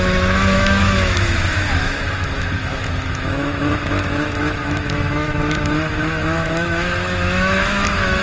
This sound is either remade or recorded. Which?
remade